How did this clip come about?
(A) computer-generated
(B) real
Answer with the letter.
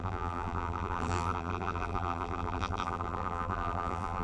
A